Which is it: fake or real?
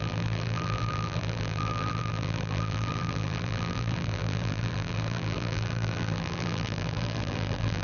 fake